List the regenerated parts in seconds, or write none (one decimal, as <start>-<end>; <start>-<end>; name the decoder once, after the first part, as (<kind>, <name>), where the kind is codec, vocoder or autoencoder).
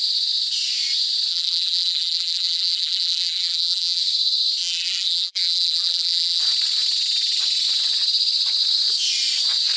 1.3-4.0 (vocoder, BigVGAN v2); 4.6-6.4